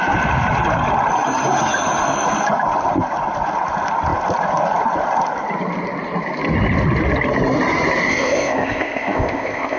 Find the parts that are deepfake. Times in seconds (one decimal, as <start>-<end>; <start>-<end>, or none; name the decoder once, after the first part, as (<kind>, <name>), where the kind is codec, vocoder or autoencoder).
8.1-9.8 (codec, ZipCodec)